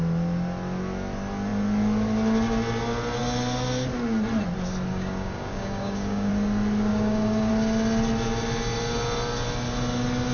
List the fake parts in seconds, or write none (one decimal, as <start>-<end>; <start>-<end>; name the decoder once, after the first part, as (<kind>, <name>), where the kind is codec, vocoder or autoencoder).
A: 4.9-6.3 (codec, DAC); 6.9-7.5